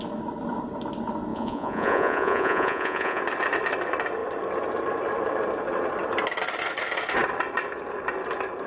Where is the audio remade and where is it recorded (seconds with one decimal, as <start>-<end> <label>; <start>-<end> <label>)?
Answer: 0.0-1.3 recorded; 1.3-3.2 remade; 3.2-8.7 recorded